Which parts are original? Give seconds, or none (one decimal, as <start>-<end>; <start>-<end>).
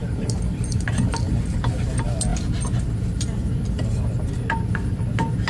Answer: 0.0-5.5